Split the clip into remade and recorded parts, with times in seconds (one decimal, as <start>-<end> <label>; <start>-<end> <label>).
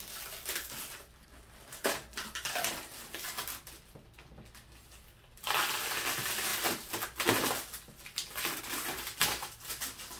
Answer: 0.0-10.2 recorded